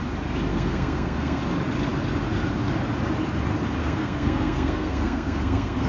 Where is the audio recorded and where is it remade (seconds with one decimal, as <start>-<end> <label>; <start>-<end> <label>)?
0.0-0.5 recorded; 0.5-1.4 remade; 1.4-3.8 recorded; 3.8-5.9 remade